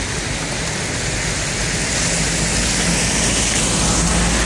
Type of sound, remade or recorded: recorded